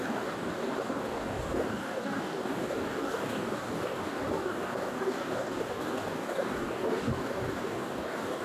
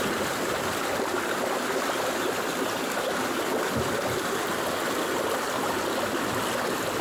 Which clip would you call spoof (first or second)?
first